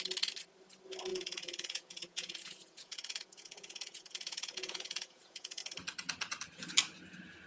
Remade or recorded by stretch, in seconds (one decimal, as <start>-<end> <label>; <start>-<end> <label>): 0.0-1.1 recorded; 1.1-5.6 remade; 5.6-7.5 recorded